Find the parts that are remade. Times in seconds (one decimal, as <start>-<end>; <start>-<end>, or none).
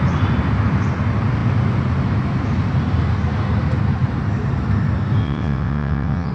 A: 5.2-6.3